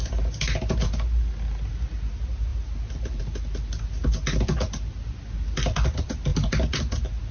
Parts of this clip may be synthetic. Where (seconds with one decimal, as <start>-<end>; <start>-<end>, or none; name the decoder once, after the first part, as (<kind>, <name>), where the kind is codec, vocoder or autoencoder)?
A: none